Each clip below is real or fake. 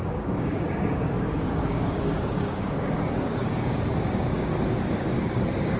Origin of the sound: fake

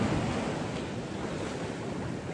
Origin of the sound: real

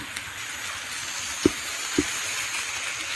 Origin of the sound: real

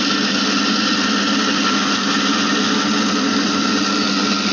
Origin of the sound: real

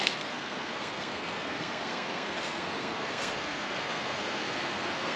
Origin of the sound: fake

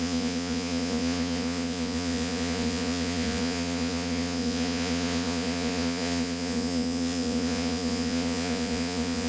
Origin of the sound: fake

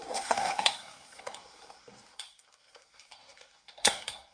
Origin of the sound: fake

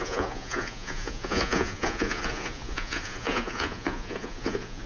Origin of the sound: fake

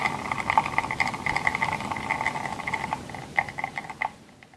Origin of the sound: real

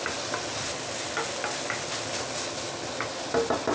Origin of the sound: real